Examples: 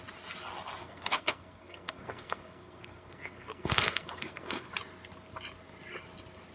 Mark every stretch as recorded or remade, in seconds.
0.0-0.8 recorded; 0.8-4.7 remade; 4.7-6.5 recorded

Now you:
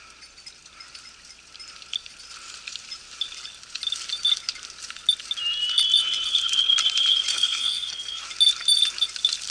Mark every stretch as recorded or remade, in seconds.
0.0-7.3 recorded; 7.3-8.2 remade; 8.2-9.5 recorded

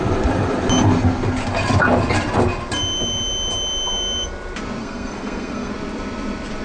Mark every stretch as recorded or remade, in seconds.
0.0-4.8 recorded; 4.8-5.7 remade; 5.7-6.6 recorded

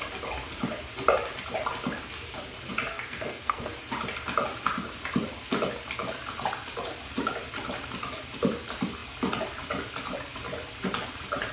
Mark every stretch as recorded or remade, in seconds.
0.0-2.9 recorded; 2.9-3.7 remade; 3.7-11.5 recorded

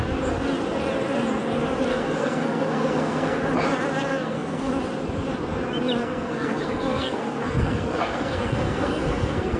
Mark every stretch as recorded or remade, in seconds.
0.0-1.9 recorded; 1.9-3.4 remade; 3.4-4.1 recorded; 4.1-4.7 remade; 4.7-6.0 recorded; 6.0-9.6 remade

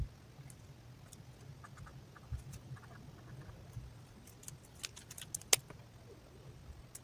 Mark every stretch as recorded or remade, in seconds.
0.0-7.0 recorded

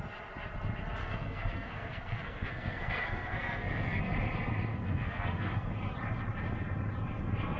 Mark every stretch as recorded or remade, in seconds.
0.0-1.0 recorded; 1.0-4.0 remade; 4.0-4.7 recorded; 4.7-5.7 remade; 5.7-7.6 recorded